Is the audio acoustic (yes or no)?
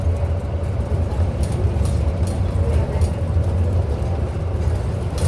yes